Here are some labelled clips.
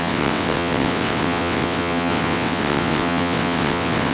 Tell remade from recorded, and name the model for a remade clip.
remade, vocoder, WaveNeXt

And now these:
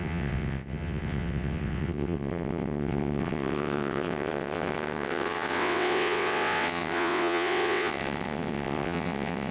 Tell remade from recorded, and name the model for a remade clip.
remade, vocoder, WaveNeXt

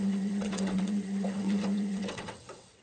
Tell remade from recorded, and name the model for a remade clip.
remade, vocoder, WaveNeXt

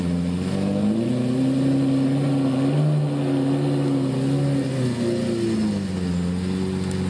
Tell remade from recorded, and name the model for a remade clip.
recorded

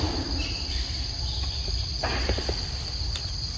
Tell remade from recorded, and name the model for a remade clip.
recorded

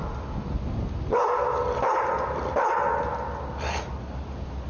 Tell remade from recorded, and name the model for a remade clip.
recorded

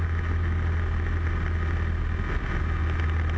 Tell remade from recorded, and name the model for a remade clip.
recorded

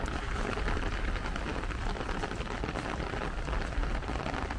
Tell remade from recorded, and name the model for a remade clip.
recorded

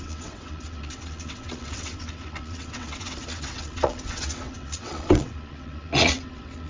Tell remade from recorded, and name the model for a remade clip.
remade, vocoder, WaveNeXt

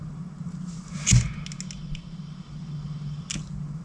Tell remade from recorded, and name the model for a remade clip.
recorded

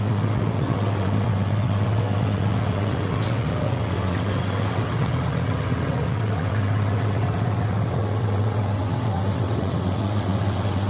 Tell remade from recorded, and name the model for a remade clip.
remade, vocoder, WaveNeXt